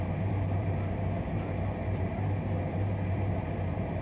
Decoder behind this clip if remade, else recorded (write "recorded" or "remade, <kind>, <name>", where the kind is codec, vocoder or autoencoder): remade, vocoder, BigVGAN v2